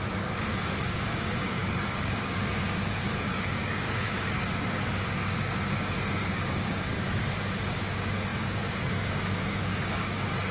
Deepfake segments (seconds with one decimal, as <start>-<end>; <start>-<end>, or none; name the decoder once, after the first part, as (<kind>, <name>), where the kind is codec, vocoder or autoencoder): 0.0-10.5 (codec, DAC)